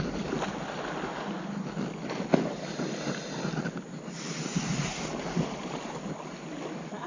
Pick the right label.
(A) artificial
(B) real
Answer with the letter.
B